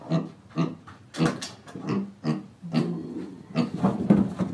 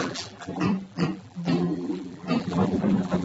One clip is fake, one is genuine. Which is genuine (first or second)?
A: first